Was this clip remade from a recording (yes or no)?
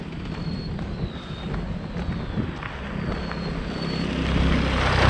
no